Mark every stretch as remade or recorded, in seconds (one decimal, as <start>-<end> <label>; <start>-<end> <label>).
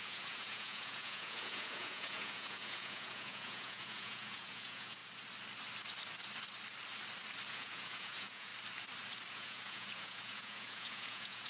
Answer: 0.0-5.0 remade; 5.0-7.5 recorded; 7.5-8.5 remade; 8.5-9.3 recorded; 9.3-11.5 remade